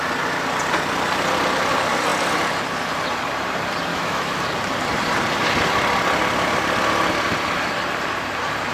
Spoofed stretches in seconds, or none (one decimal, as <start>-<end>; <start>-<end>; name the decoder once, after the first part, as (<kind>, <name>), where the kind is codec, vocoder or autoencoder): 3.9-4.4 (autoencoder, DAC-VAE)